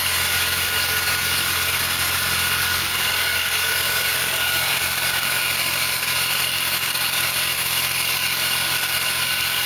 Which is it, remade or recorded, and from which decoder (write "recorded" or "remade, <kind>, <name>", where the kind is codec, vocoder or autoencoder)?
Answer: remade, codec, DAC